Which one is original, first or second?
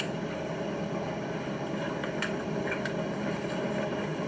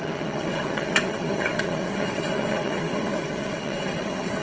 first